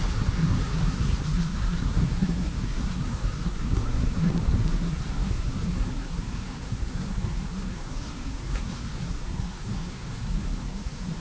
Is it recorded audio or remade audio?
remade